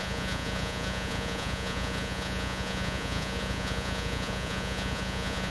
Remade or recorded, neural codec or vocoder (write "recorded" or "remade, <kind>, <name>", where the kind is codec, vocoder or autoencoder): remade, vocoder, Vocos